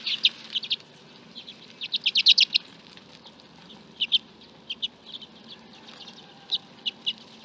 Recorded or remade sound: recorded